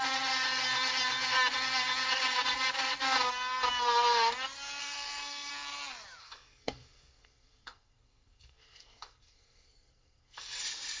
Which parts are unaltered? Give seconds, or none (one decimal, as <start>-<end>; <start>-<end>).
0.0-4.8; 5.5-6.2; 10.6-11.0